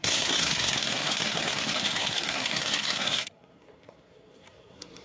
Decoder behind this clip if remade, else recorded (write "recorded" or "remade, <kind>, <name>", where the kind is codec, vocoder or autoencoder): remade, codec, SNAC